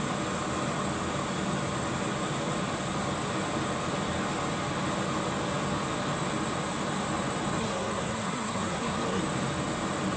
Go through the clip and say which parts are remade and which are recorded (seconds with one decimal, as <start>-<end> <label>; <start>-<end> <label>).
0.0-7.6 recorded; 7.6-9.2 remade; 9.2-10.2 recorded